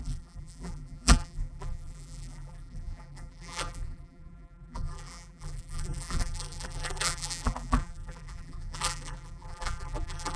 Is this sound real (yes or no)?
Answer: no